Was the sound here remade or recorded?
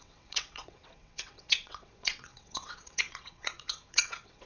remade